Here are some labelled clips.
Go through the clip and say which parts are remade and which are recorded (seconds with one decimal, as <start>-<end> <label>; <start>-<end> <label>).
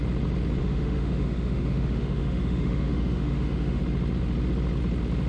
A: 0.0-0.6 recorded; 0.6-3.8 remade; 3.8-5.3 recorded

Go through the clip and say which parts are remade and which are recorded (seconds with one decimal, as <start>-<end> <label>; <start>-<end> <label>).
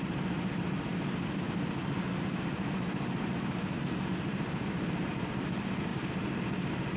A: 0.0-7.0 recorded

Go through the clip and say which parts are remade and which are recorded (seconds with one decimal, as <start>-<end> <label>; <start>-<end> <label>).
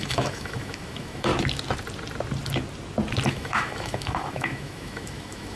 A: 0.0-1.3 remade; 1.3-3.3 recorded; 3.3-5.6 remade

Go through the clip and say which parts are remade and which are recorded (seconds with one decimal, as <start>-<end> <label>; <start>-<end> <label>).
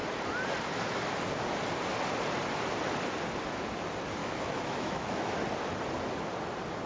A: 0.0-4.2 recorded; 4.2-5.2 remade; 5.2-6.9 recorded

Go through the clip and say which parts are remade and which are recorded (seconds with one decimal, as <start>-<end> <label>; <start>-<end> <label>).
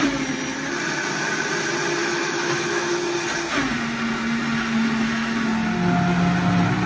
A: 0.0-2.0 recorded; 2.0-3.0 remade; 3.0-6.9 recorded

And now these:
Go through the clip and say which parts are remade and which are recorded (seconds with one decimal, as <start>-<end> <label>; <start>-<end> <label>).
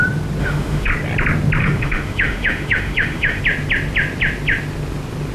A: 0.0-0.4 recorded; 0.4-0.9 remade; 0.9-1.6 recorded; 1.6-3.4 remade; 3.4-5.3 recorded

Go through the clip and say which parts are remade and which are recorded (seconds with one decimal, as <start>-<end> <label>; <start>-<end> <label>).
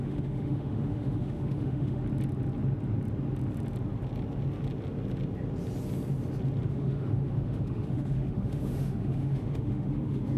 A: 0.0-2.0 remade; 2.0-6.7 recorded; 6.7-10.4 remade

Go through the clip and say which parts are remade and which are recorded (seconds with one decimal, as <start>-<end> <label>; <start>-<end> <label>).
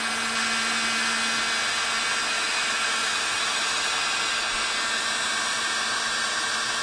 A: 0.0-2.2 recorded; 2.2-3.8 remade; 3.8-6.8 recorded